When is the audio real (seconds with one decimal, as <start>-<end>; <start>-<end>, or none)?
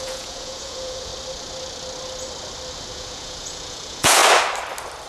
1.1-2.9; 4.2-5.1